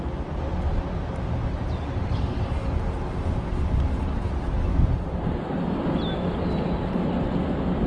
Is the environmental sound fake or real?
real